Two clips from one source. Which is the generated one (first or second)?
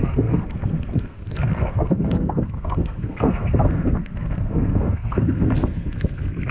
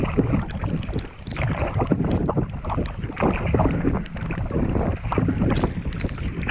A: first